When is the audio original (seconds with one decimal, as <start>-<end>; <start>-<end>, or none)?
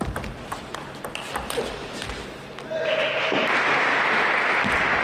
1.8-3.7